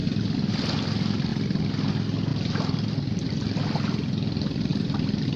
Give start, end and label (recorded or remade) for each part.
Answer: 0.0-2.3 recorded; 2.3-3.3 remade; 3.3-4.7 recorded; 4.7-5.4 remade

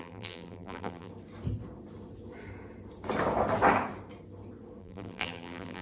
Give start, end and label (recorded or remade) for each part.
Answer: 0.0-1.1 remade; 1.1-4.8 recorded; 4.8-5.8 remade

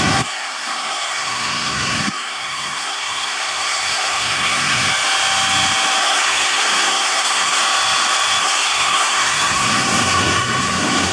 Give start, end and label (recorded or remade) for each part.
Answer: 0.0-4.9 remade; 4.9-6.0 recorded; 6.0-7.6 remade; 7.6-8.4 recorded; 8.4-11.1 remade